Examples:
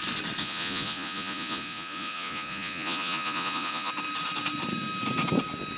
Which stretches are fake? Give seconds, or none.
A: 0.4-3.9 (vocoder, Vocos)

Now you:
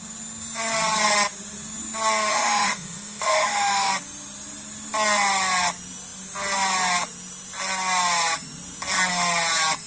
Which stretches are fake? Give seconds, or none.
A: 2.3-3.9 (autoencoder, DAC-VAE)

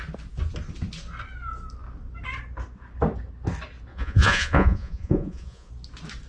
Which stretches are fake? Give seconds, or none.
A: 3.9-5.7 (vocoder, Vocos)

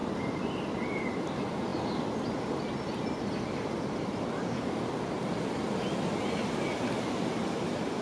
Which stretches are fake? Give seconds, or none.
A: 0.0-1.2 (vocoder, BigVGAN v2)

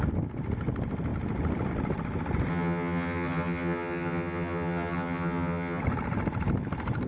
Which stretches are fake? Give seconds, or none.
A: 2.5-5.8 (vocoder, HiFi-GAN)